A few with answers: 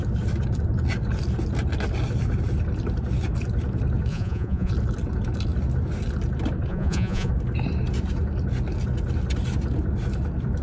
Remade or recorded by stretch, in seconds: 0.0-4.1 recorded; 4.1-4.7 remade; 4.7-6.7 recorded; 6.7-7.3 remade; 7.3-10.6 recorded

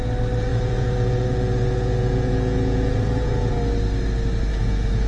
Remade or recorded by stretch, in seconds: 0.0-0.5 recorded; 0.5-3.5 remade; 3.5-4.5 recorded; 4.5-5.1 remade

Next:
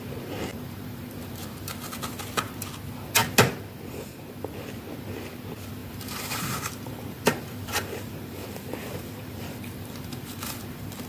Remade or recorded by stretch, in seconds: 0.0-0.5 recorded; 0.5-1.6 remade; 1.6-5.8 recorded; 5.8-11.1 remade